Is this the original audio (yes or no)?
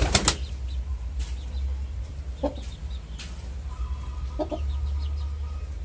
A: yes